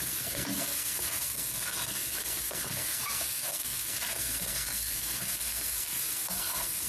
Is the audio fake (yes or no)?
yes